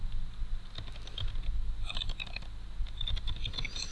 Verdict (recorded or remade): recorded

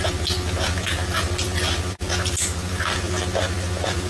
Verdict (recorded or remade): recorded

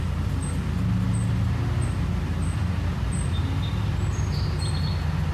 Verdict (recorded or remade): recorded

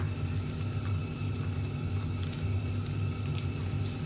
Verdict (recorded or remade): recorded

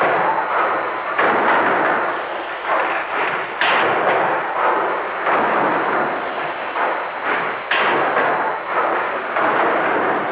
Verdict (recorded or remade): recorded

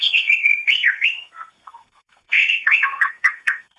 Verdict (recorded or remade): remade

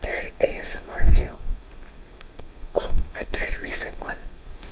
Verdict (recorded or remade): remade